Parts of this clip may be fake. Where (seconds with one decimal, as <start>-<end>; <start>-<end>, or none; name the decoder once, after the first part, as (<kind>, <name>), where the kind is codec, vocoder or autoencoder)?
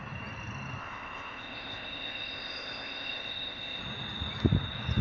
0.8-3.8 (codec, ZipCodec)